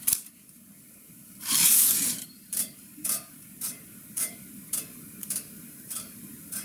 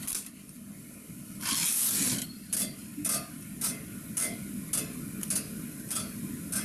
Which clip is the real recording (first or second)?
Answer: second